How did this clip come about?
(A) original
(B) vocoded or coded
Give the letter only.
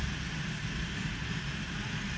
A